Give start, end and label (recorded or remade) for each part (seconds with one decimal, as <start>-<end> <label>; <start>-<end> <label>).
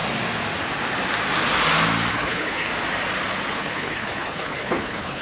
0.0-2.1 recorded; 2.1-2.7 remade; 2.7-3.5 recorded; 3.5-5.2 remade